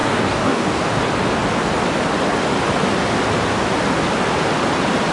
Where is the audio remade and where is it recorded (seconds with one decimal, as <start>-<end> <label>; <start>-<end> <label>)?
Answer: 0.0-0.8 remade; 0.8-5.1 recorded